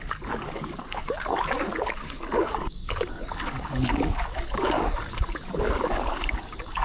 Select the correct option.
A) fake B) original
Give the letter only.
A